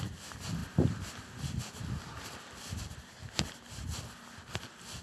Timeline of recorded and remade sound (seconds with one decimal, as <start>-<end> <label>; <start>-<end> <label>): 0.0-5.0 recorded